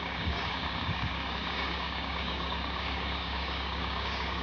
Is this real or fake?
fake